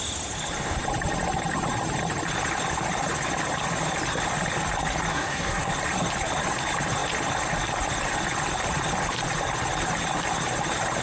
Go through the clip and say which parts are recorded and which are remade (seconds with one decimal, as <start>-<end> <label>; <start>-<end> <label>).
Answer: 0.0-5.1 recorded; 5.1-5.7 remade; 5.7-11.0 recorded